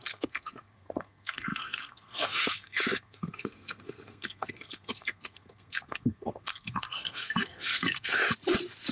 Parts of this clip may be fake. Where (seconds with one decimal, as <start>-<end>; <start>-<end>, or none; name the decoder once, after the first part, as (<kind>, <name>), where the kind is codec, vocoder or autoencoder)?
0.0-8.2 (codec, SNAC)